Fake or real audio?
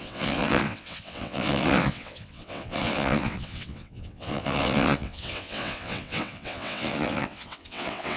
fake